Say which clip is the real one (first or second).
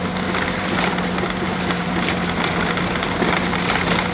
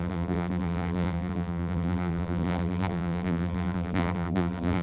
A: first